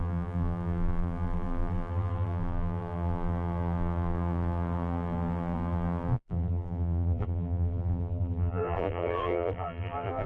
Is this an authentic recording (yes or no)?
no